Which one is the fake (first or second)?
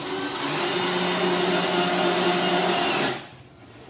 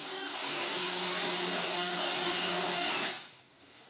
second